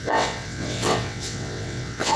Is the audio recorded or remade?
remade